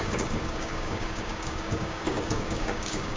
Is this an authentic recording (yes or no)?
no